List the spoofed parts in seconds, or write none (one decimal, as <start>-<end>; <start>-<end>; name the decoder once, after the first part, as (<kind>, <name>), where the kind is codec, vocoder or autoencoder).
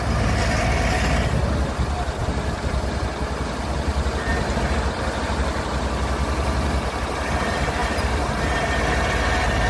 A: none